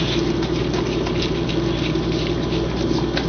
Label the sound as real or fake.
real